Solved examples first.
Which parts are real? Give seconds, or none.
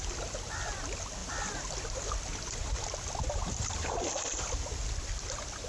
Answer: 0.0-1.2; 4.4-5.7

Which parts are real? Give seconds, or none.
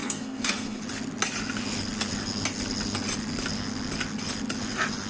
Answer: 0.8-5.1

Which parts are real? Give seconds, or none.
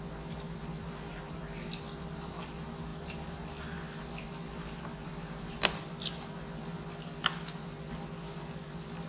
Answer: 0.0-9.1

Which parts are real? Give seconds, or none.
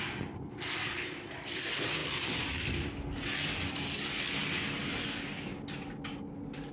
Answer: 0.0-6.7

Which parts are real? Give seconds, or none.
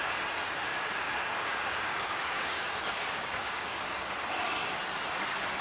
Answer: 0.0-0.7; 4.1-5.6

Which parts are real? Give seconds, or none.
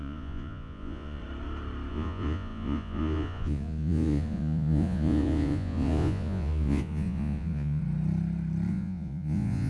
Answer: 1.2-1.9; 7.8-8.7